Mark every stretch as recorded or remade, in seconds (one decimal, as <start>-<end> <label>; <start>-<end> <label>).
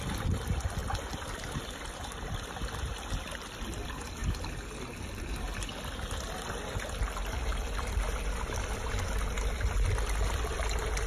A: 0.0-11.1 recorded